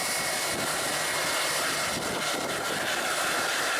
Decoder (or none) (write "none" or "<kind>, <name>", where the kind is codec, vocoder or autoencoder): none